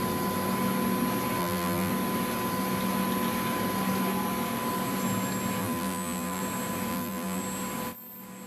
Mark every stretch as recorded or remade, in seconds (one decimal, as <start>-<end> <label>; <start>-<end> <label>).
0.0-1.4 recorded; 1.4-1.9 remade; 1.9-5.6 recorded; 5.6-6.4 remade; 6.4-6.9 recorded; 6.9-7.4 remade; 7.4-8.5 recorded